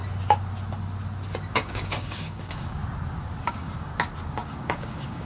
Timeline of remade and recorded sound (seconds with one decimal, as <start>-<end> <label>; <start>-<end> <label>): 0.0-1.5 recorded; 1.5-2.8 remade; 2.8-3.5 recorded; 3.5-3.9 remade; 3.9-4.5 recorded; 4.5-5.3 remade